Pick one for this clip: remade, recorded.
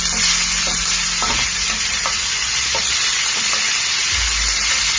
recorded